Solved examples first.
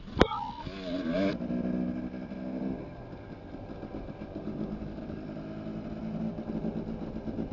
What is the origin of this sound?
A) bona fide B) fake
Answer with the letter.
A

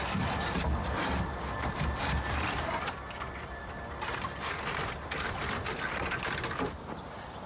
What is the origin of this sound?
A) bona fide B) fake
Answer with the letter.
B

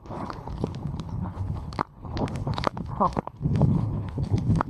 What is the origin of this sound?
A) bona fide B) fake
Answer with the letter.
B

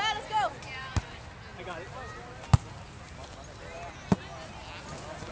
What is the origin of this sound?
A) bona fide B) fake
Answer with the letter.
A